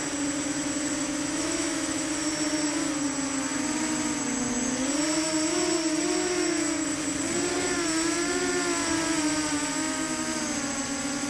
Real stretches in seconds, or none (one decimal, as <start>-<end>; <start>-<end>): 0.0-1.0; 2.1-11.3